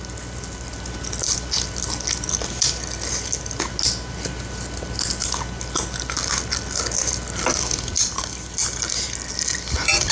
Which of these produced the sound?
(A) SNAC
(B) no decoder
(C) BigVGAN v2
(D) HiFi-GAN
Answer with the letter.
B